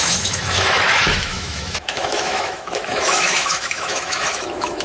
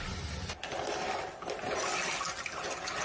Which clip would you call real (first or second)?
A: second